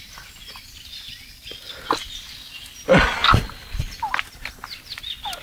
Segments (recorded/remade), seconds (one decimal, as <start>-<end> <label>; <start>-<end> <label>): 0.0-5.4 recorded